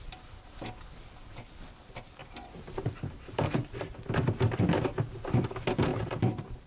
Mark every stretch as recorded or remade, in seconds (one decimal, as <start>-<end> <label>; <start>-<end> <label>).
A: 0.0-2.2 recorded; 2.2-3.9 remade; 3.9-5.9 recorded; 5.9-6.7 remade